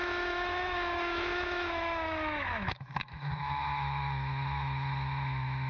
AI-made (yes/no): yes